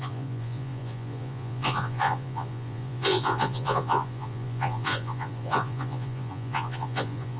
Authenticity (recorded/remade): remade